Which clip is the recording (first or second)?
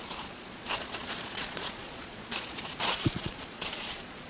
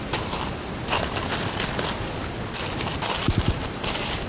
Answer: second